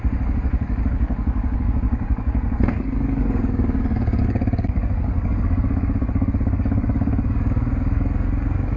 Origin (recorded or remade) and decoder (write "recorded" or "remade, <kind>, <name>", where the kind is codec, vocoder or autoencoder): remade, codec, DAC